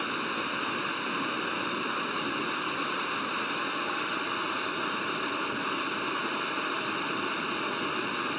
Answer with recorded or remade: recorded